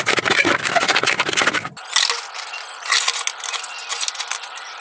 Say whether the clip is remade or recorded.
recorded